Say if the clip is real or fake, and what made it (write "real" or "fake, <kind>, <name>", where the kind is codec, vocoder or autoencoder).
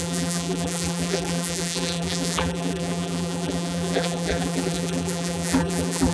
fake, vocoder, BigVGAN v2